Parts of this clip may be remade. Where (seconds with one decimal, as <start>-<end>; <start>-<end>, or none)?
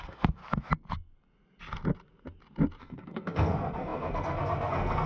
0.0-0.4; 2.8-5.1